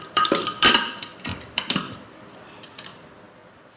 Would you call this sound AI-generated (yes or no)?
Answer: yes